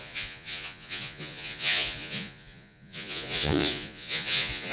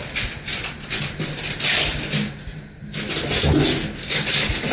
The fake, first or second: first